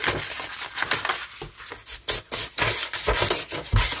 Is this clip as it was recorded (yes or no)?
yes